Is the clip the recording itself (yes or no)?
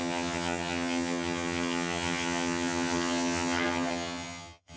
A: no